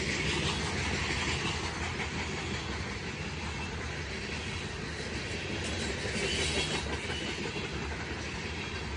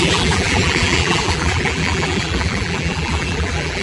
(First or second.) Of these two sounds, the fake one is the second